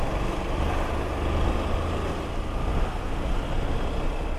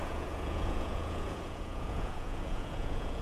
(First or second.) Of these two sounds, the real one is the first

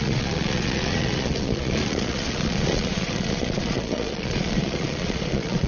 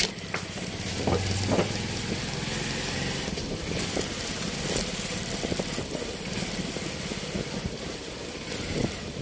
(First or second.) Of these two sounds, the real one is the second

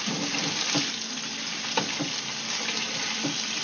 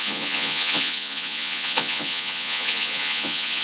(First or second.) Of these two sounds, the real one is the first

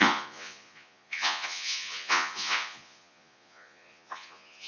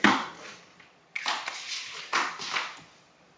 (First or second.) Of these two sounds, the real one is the second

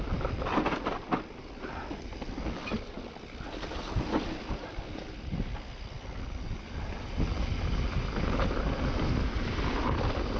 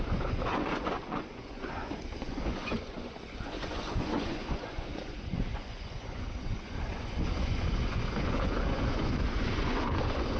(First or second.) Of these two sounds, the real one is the first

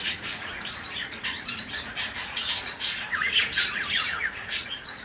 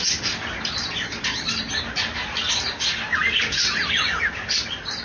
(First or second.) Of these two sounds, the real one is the second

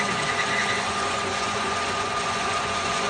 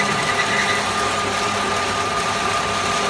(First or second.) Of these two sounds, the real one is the second